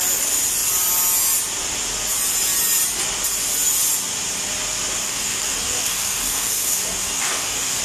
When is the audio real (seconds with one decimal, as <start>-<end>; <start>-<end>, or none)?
0.0-5.0